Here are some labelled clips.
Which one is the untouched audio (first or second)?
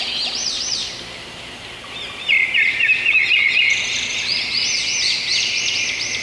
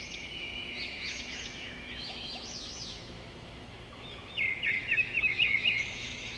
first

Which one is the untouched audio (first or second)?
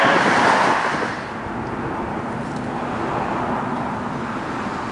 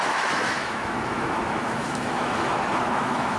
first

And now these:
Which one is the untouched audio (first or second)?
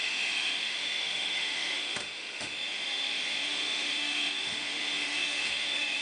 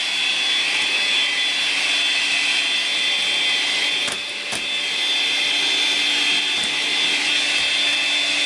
second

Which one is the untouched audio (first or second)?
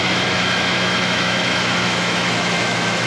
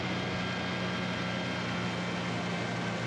second